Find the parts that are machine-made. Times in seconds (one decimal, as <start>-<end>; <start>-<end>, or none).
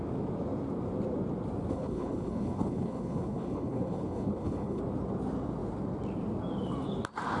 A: 1.7-4.8